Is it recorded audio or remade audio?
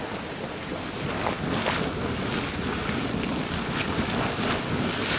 recorded